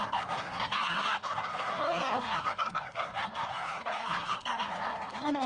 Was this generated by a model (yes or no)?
yes